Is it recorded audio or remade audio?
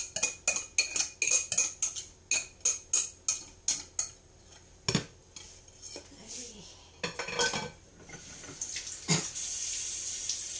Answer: recorded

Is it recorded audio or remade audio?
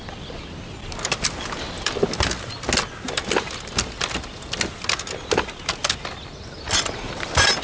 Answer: recorded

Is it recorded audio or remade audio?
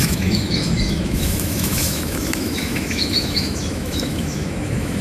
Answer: remade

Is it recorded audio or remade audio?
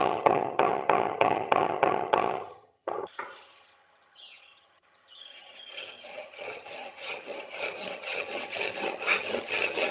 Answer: remade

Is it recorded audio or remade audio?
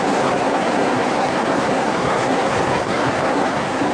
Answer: remade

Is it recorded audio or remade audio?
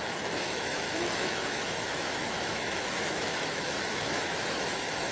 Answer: remade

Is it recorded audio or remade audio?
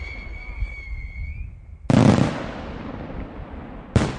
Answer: recorded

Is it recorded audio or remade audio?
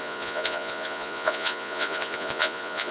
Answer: remade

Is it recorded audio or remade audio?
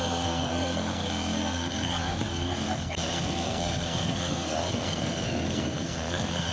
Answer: remade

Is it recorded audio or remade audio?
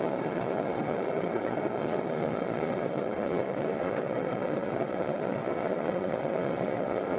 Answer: remade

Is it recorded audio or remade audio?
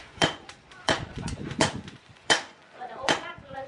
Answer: remade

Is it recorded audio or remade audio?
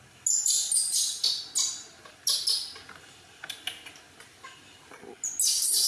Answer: recorded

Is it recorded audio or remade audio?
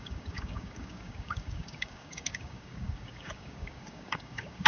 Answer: remade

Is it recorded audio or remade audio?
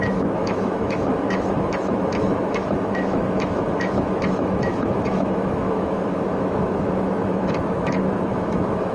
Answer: remade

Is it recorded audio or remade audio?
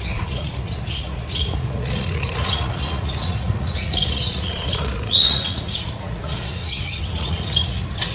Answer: remade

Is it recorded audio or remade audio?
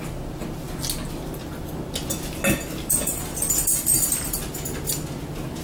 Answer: recorded